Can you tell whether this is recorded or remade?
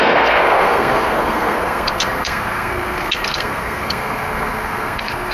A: remade